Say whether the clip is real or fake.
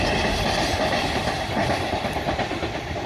real